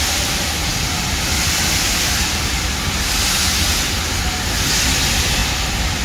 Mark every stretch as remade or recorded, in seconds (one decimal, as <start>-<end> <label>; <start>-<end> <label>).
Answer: 0.0-6.0 recorded